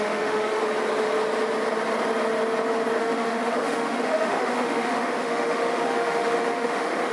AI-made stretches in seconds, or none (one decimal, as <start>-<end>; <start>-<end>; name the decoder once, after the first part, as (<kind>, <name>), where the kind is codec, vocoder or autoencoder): 0.0-0.6 (autoencoder, DAC-VAE); 3.0-7.1